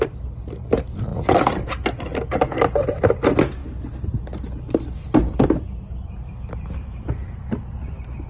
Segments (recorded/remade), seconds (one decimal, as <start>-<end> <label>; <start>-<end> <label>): 0.0-8.3 recorded